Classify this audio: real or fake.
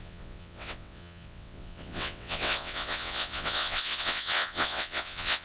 fake